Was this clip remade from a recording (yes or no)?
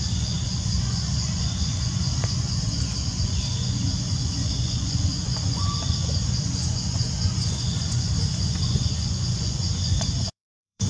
yes